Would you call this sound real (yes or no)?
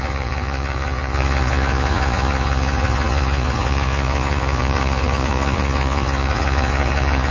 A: no